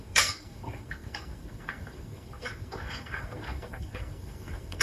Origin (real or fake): fake